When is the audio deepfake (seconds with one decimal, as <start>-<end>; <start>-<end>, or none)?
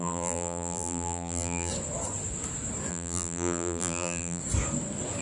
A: 0.0-1.7; 2.9-4.4